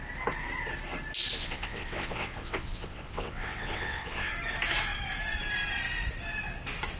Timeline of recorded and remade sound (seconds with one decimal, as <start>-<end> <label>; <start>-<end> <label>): 0.0-1.4 recorded; 1.4-4.3 remade; 4.3-7.0 recorded